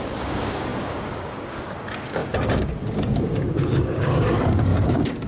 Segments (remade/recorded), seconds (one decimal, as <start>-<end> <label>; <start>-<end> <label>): 0.0-5.3 remade